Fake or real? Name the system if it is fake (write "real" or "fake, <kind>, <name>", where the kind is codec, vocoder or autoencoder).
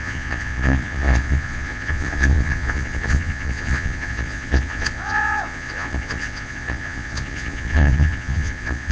fake, vocoder, Vocos